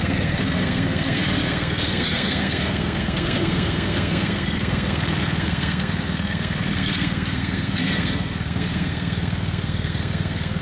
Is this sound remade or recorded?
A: remade